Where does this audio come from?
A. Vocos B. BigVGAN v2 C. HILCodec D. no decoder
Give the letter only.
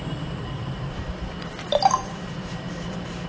B